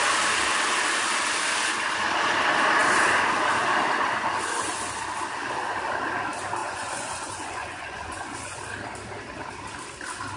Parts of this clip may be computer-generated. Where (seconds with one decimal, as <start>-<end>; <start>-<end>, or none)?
6.6-8.6